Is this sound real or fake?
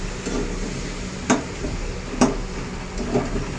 real